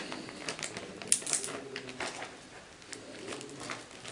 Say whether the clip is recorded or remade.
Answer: recorded